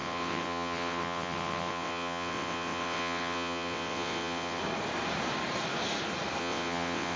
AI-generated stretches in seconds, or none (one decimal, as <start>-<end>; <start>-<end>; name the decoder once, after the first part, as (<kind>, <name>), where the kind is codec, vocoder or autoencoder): 0.0-4.6 (vocoder, WaveNeXt); 6.4-7.2